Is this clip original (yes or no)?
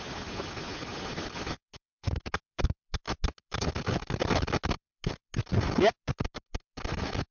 yes